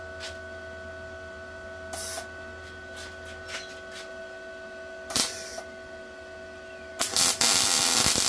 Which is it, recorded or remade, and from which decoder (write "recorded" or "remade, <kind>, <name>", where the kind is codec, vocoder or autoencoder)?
recorded